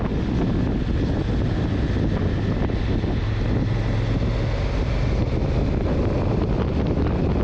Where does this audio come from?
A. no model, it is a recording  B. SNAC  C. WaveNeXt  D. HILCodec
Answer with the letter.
A